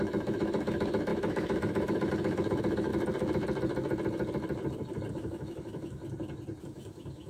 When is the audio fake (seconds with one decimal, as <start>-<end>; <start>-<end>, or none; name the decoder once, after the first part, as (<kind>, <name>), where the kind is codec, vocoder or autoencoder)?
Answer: 0.0-2.9 (autoencoder, DAC-VAE); 5.1-6.0; 6.6-7.3